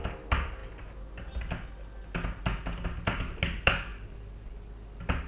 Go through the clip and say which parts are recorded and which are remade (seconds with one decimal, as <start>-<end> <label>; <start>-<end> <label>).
0.0-5.3 recorded